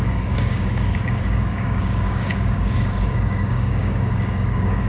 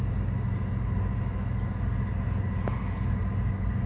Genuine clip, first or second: second